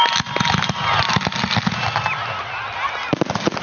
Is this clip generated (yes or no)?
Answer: no